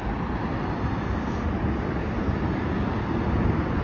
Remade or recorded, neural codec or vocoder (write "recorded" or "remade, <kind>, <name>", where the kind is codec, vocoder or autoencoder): recorded